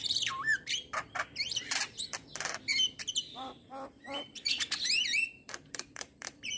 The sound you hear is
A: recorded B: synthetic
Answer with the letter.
B